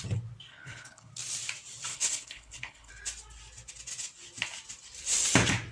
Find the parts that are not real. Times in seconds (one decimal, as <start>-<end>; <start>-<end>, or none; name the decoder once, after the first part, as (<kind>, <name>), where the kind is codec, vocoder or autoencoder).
0.5-1.1 (codec, HILCodec); 1.9-2.9